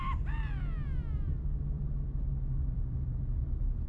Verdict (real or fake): fake